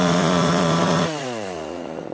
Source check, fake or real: fake